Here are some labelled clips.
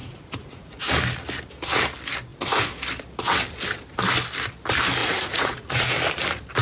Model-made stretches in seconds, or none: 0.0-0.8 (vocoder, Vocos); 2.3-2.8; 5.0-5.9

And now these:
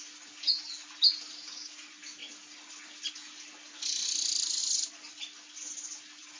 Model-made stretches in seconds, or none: none

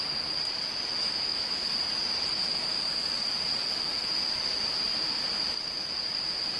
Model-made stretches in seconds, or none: 1.0-1.6 (autoencoder, DAC-VAE); 2.4-3.1

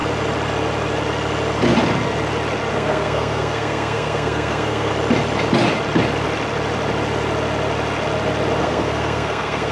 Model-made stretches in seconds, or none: 2.7-4.9 (codec, SNAC); 8.6-9.7

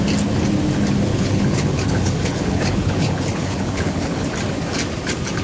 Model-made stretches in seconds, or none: 1.1-4.3 (codec, HILCodec)